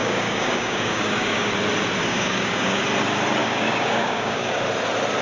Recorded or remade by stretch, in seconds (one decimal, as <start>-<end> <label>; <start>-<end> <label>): 0.0-1.5 remade; 1.5-2.0 recorded; 2.0-2.8 remade; 2.8-3.4 recorded; 3.4-4.6 remade; 4.6-5.2 recorded